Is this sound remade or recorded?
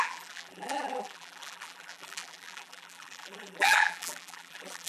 remade